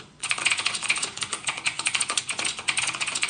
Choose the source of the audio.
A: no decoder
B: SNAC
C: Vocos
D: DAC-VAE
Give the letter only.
C